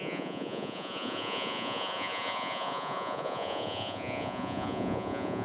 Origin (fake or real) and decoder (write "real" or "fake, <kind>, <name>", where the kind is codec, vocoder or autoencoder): fake, vocoder, Vocos